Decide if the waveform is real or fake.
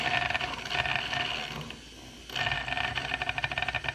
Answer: real